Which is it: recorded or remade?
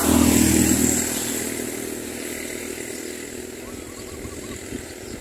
recorded